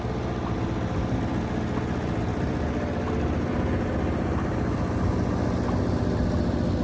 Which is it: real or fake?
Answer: real